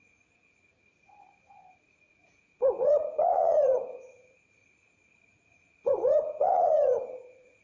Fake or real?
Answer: fake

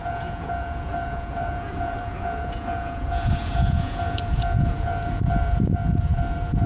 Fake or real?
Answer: fake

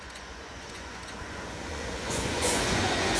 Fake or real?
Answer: fake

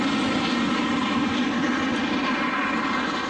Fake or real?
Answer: real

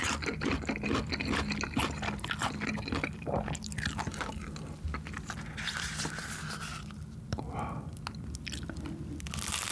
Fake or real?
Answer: real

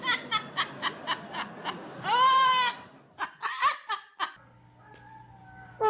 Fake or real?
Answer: real